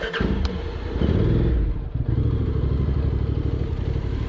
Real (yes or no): yes